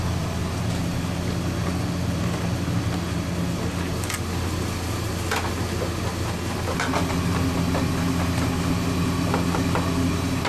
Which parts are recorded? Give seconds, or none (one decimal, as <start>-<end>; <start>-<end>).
0.0-10.5